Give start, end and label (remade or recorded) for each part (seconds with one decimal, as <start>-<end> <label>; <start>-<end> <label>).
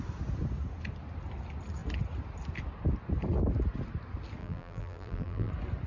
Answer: 0.0-4.4 recorded; 4.4-5.5 remade; 5.5-5.9 recorded